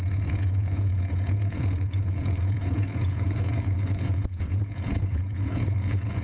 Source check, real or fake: fake